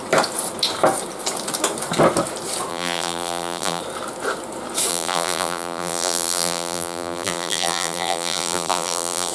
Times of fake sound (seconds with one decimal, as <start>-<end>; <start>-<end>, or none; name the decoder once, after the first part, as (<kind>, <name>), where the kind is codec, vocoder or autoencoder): 2.7-3.8 (vocoder, BigVGAN v2); 4.9-9.3